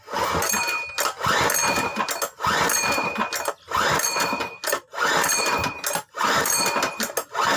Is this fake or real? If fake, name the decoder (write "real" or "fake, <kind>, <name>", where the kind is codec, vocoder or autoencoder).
real